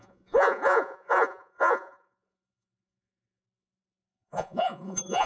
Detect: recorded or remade remade